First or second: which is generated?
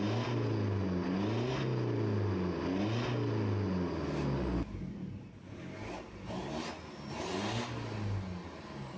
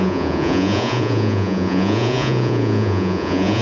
second